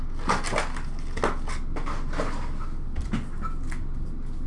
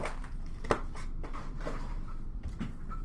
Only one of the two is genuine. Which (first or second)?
first